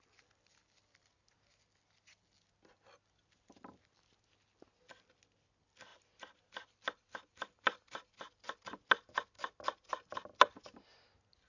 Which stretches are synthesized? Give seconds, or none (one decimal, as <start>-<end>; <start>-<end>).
none